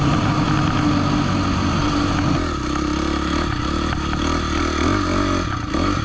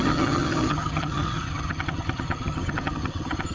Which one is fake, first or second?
second